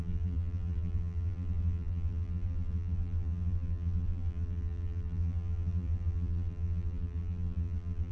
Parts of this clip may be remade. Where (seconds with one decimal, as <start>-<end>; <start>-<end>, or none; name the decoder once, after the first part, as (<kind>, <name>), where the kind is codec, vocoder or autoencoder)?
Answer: 0.0-8.1 (vocoder, BigVGAN v2)